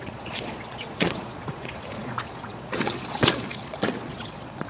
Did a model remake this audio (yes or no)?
yes